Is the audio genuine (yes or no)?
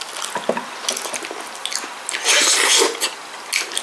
yes